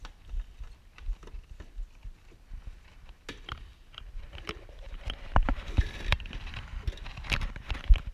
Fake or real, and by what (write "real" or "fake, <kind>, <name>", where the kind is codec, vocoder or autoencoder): real